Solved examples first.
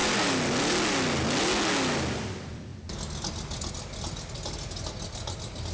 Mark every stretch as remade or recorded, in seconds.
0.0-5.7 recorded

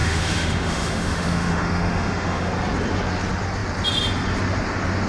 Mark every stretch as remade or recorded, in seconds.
0.0-2.5 remade; 2.5-5.1 recorded

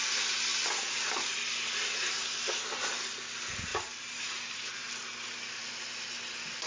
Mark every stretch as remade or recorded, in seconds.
0.0-6.7 recorded